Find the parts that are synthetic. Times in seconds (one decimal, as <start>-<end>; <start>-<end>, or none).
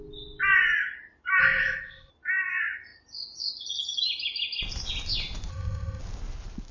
1.4-2.1; 5.5-6.0